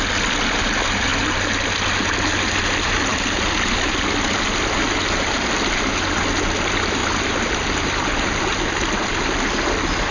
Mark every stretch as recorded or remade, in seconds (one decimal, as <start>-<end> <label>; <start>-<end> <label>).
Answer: 0.0-10.1 recorded